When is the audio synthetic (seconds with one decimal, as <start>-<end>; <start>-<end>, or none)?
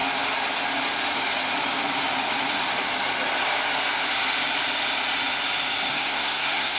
5.9-6.8